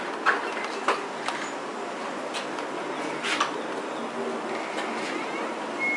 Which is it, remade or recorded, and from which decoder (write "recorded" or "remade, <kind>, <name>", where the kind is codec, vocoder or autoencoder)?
recorded